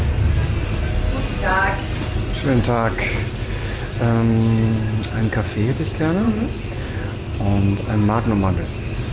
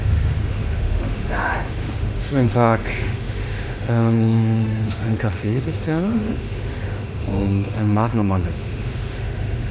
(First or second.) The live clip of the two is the first